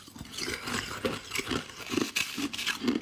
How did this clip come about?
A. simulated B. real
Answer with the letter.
B